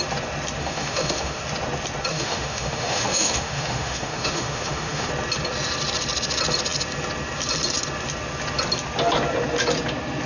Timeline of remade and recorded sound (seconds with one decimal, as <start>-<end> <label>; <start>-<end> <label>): 0.0-0.6 recorded; 0.6-1.4 remade; 1.4-2.1 recorded; 2.1-5.1 remade; 5.1-10.3 recorded